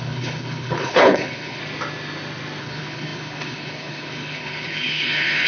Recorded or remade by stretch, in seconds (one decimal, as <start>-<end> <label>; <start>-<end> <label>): 0.0-1.6 remade; 1.6-2.6 recorded; 2.6-5.5 remade